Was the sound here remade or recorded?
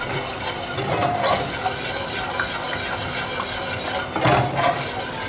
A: recorded